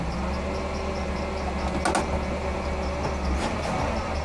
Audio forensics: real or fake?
real